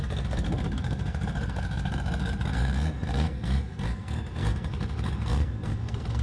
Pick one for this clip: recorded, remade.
remade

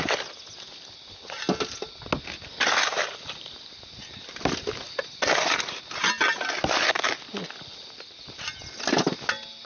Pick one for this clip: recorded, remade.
recorded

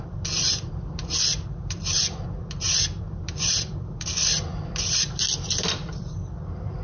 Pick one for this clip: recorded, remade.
remade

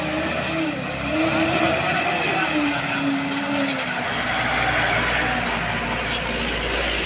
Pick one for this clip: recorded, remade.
recorded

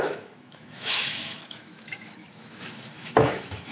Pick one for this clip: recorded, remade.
remade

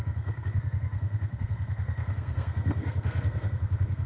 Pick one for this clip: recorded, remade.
remade